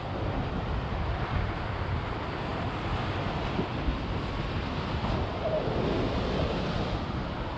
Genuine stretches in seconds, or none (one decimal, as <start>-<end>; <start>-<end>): 0.0-7.6